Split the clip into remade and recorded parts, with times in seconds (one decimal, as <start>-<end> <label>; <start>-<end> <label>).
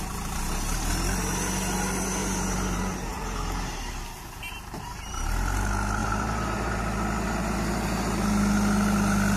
0.0-2.2 recorded; 2.2-3.9 remade; 3.9-6.0 recorded; 6.0-6.8 remade; 6.8-9.4 recorded